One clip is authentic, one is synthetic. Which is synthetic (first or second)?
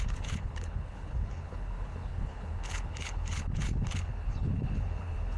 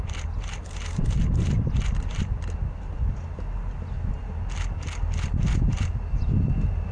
first